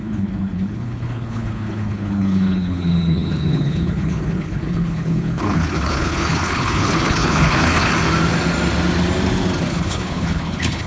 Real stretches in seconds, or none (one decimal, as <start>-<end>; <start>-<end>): 7.9-9.7